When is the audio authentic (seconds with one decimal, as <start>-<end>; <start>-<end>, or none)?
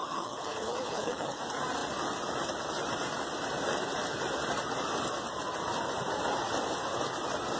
1.4-7.6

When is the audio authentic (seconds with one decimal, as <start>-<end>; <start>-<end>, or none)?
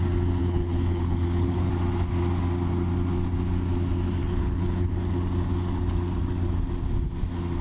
0.0-0.4; 1.7-4.2; 4.9-7.6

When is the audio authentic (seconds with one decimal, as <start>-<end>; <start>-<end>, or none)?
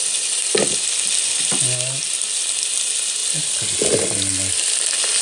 0.0-5.2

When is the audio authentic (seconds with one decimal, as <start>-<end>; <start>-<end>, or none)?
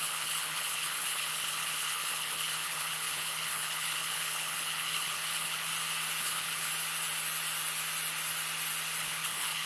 5.7-6.2; 6.7-9.0